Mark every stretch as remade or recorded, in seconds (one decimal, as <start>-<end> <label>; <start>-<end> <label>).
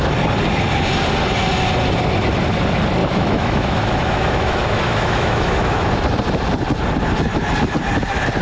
0.0-3.0 recorded; 3.0-5.9 remade; 5.9-8.4 recorded